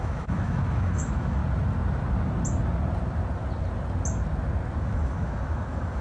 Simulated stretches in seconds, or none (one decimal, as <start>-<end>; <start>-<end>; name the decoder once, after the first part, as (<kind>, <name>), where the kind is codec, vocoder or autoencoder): 0.0-1.4 (autoencoder, DAC-VAE); 4.8-6.0